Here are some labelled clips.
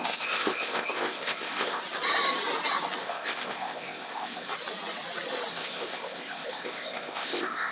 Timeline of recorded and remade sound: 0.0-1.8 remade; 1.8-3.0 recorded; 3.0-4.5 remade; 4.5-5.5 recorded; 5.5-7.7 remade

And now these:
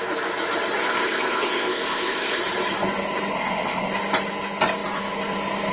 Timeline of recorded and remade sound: 0.0-0.8 recorded; 0.8-2.4 remade; 2.4-3.3 recorded; 3.3-3.9 remade; 3.9-5.7 recorded

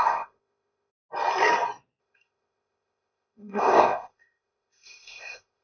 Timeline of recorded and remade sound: 0.0-0.9 remade; 0.9-2.0 recorded; 2.0-5.6 remade